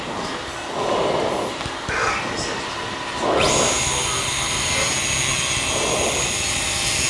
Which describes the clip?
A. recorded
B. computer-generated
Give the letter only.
A